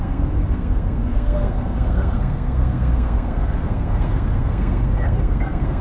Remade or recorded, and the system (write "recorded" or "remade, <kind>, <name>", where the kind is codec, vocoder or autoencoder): remade, codec, SNAC